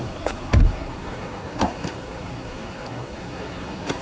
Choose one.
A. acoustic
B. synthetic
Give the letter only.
B